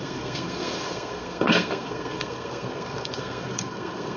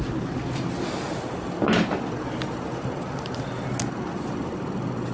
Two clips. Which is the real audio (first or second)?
second